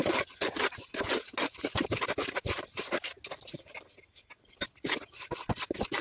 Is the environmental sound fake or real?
real